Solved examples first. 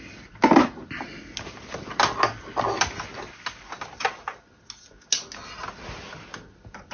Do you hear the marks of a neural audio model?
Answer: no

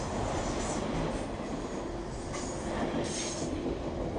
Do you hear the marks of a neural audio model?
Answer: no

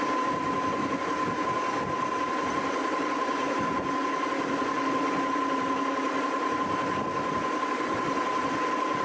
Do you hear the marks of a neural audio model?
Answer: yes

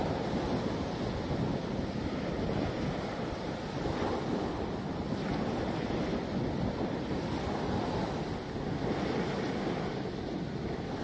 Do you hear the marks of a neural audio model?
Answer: no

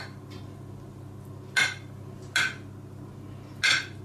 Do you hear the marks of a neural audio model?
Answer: no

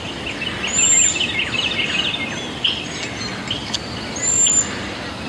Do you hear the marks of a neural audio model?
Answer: no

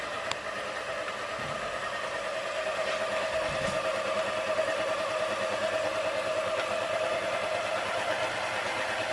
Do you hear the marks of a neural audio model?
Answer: no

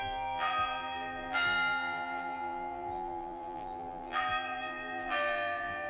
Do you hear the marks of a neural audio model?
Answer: yes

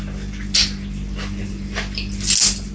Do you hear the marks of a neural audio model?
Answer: no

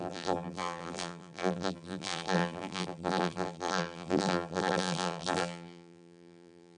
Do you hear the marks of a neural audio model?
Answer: yes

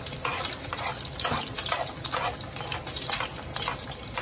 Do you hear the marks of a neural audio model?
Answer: no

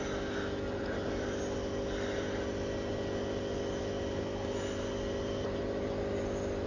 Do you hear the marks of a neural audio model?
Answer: no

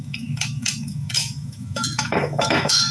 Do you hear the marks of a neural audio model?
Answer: yes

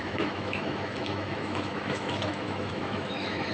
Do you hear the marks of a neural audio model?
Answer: yes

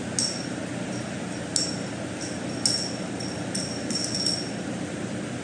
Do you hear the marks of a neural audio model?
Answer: no